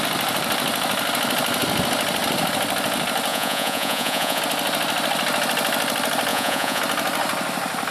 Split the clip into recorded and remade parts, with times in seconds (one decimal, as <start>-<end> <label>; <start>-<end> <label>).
0.0-3.3 recorded; 3.3-4.4 remade; 4.4-6.3 recorded; 6.3-6.8 remade; 6.8-7.9 recorded